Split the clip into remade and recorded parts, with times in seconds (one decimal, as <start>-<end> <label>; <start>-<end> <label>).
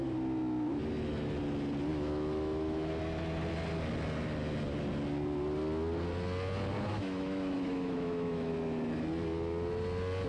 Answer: 0.0-1.9 recorded; 1.9-2.9 remade; 2.9-6.9 recorded; 6.9-8.5 remade; 8.5-10.3 recorded